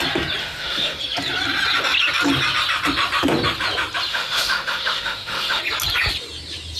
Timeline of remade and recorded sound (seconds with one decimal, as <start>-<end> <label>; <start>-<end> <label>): 0.0-0.4 recorded; 0.4-1.0 remade; 1.0-4.1 recorded; 4.1-5.6 remade; 5.6-6.8 recorded